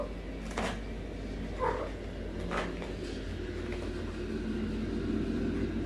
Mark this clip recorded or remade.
recorded